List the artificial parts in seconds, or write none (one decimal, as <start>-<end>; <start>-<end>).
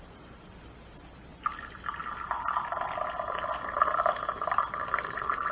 none